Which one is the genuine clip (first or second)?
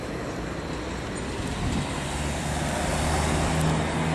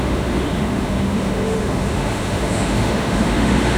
first